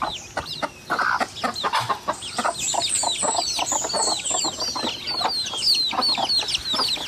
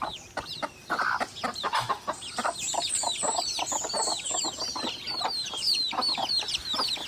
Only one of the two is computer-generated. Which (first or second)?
second